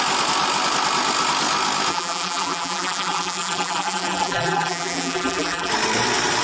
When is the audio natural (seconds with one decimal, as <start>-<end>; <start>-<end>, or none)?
0.0-1.9; 5.7-6.4